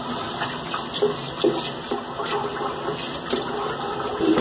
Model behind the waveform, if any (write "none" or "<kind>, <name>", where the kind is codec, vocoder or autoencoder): none